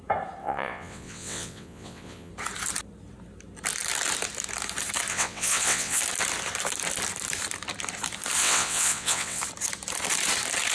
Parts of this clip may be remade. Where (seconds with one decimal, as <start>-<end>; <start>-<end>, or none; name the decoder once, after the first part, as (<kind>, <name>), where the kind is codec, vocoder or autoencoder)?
0.4-2.3 (vocoder, WaveNeXt); 5.1-6.0; 8.4-9.4